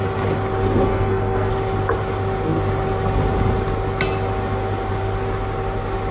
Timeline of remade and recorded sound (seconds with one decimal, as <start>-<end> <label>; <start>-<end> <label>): 0.0-0.9 recorded; 0.9-1.5 remade; 1.5-6.1 recorded